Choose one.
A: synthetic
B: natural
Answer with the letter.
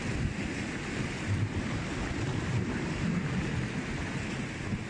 B